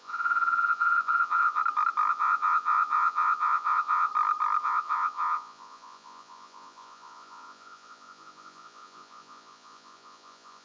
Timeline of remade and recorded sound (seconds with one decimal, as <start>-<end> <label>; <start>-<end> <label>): 0.0-1.6 remade; 1.6-2.1 recorded; 2.1-4.1 remade; 4.1-4.6 recorded; 4.6-10.6 remade